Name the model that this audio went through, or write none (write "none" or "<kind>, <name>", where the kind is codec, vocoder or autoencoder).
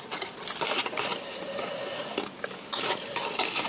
none